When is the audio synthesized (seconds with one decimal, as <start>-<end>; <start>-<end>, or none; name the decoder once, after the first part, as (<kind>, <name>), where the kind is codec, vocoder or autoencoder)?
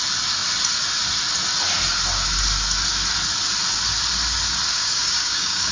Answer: 4.7-5.7 (codec, DAC)